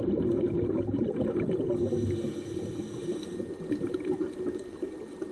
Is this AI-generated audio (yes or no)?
no